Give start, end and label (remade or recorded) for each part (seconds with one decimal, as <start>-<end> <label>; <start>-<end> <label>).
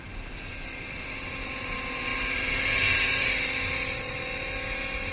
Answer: 0.0-5.1 recorded